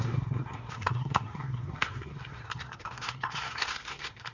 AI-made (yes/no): yes